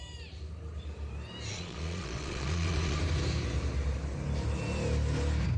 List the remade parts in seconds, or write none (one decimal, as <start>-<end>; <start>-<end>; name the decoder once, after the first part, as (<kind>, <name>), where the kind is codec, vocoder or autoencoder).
1.5-3.0 (vocoder, Vocos)